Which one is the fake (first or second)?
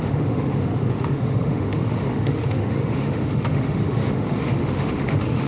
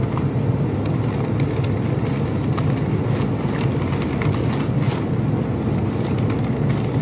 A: first